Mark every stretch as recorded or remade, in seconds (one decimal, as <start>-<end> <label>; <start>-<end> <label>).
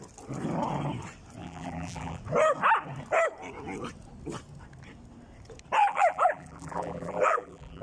0.0-1.4 recorded; 1.4-2.2 remade; 2.2-5.8 recorded; 5.8-7.8 remade